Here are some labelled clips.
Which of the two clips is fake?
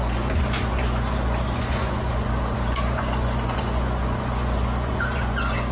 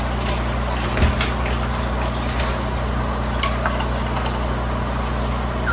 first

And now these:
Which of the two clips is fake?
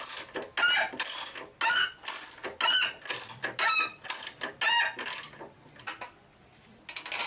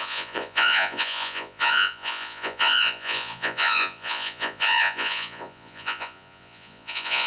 second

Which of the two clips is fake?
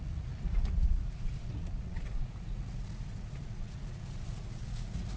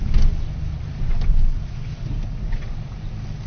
first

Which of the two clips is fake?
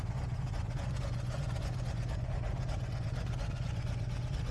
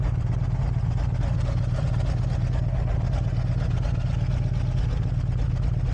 first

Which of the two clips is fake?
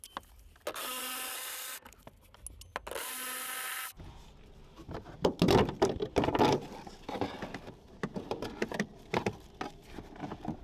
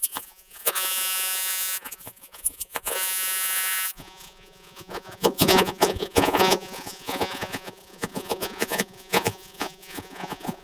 second